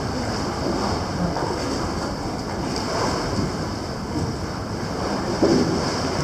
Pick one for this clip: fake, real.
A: real